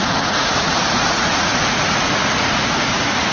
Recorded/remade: remade